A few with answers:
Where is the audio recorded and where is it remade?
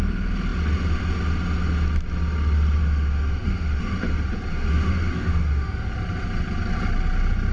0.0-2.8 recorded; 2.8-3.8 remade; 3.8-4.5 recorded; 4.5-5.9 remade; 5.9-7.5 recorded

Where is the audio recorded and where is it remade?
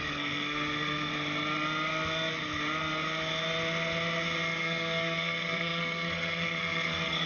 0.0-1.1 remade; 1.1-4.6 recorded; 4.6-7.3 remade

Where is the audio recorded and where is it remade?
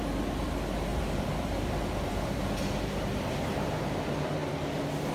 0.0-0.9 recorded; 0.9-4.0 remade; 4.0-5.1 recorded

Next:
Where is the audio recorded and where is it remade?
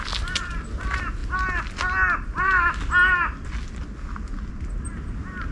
0.0-5.5 recorded